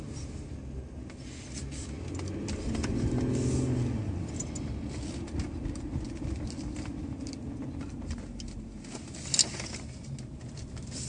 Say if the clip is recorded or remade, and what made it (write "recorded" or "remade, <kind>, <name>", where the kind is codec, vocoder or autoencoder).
recorded